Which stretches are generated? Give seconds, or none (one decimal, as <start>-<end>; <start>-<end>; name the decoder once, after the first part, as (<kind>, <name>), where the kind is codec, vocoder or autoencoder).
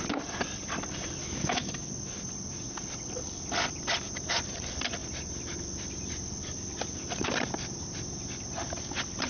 1.2-1.8 (autoencoder, DAC-VAE)